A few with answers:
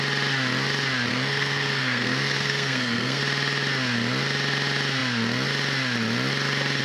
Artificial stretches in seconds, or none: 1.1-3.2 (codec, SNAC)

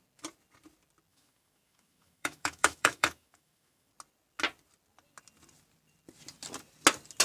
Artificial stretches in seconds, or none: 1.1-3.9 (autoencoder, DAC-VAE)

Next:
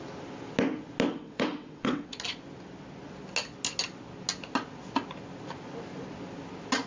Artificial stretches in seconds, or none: 1.1-2.1 (vocoder, WaveNeXt)

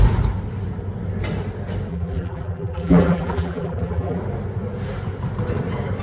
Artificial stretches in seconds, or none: 1.9-4.2 (vocoder, BigVGAN v2)

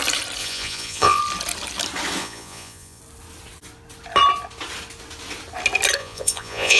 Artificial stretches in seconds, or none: 0.4-1.2 (vocoder, Vocos); 2.2-3.0; 6.0-6.8